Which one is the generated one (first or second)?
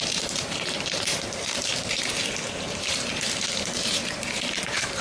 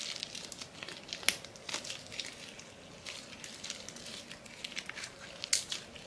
first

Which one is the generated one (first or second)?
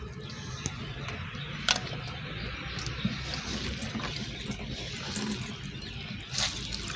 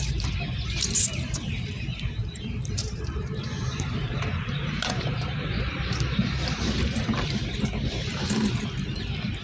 second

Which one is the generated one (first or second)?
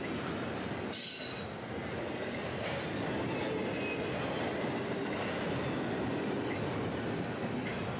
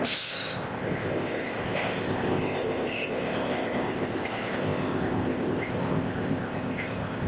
second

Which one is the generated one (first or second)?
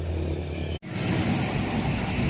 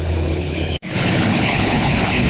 second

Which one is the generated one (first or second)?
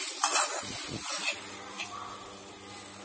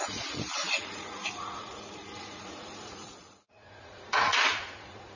second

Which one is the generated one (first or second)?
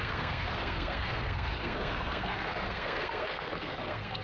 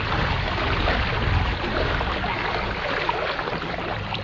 first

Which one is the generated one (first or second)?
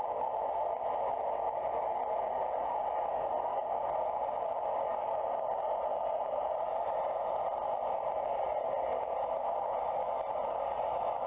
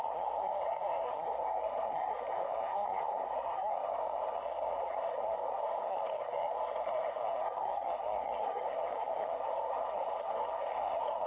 second